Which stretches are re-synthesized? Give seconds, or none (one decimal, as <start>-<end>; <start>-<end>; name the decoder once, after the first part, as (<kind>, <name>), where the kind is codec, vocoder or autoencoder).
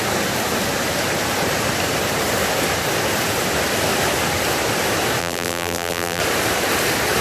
5.2-6.2 (vocoder, BigVGAN v2)